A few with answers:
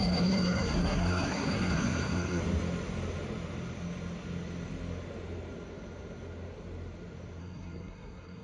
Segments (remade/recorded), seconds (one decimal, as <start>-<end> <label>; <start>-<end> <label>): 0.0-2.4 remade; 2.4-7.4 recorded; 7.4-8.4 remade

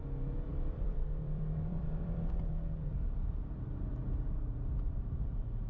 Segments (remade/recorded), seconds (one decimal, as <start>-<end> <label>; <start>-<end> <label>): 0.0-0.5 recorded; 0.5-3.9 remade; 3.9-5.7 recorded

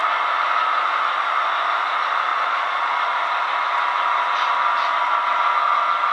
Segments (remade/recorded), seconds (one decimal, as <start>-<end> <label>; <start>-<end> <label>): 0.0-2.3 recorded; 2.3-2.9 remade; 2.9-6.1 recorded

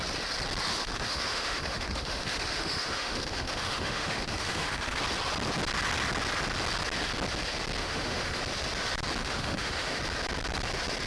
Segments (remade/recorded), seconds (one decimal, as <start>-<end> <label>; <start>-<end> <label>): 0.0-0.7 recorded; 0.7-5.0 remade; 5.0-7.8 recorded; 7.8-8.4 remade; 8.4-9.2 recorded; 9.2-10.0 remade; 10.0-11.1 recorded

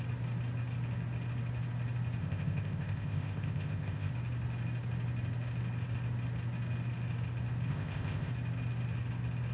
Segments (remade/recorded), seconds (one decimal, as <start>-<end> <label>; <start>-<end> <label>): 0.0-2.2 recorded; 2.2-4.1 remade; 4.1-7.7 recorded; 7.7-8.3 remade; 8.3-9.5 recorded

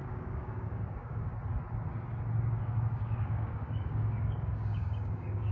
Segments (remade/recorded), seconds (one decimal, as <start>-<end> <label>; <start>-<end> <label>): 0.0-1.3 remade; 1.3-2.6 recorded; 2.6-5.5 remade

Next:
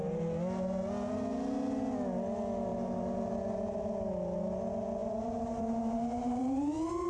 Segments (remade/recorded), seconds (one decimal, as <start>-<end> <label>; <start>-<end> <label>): 0.0-2.7 recorded; 2.7-3.8 remade; 3.8-5.0 recorded; 5.0-6.4 remade; 6.4-7.1 recorded

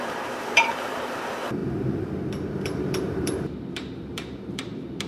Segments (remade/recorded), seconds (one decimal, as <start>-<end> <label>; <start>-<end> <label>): 0.0-5.1 remade